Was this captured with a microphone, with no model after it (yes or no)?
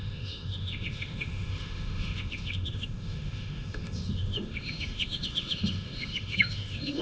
no